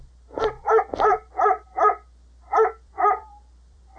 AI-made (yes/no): yes